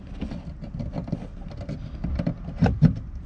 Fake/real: real